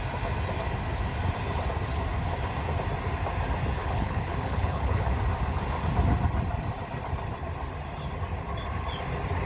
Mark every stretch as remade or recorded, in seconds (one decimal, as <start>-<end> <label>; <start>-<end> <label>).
0.0-3.8 recorded; 3.8-5.1 remade; 5.1-9.5 recorded